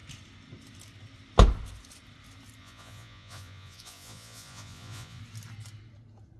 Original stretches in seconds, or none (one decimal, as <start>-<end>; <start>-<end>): 0.0-2.6; 5.2-6.4